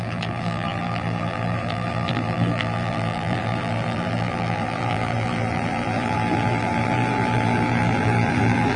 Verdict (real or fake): fake